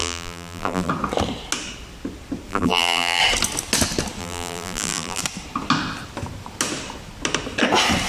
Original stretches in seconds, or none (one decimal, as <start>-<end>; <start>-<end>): 0.9-2.5; 3.2-4.2; 5.2-8.1